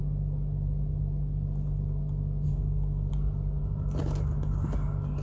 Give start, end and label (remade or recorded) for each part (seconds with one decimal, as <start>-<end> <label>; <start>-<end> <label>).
0.0-5.2 recorded